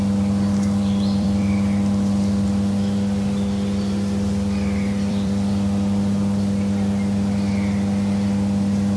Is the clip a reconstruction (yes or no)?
yes